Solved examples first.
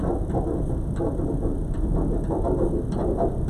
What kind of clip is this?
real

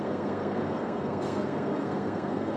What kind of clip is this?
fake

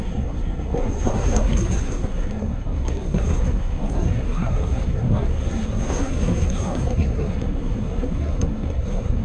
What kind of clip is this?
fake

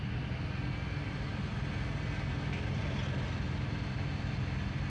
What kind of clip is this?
real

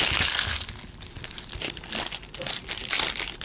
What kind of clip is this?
real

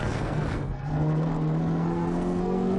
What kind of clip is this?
fake